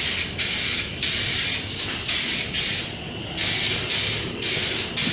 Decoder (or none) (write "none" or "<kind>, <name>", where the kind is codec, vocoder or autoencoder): none